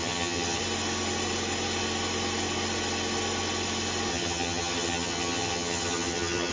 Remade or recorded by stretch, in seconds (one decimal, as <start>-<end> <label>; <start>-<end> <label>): 0.0-0.6 remade; 0.6-4.1 recorded; 4.1-6.5 remade